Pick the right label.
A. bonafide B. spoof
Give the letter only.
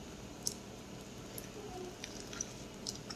A